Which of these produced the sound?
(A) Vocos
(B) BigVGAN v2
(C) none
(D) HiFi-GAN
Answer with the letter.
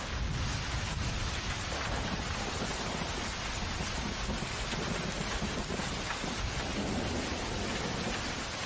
C